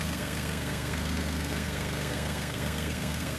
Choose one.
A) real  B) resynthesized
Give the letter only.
B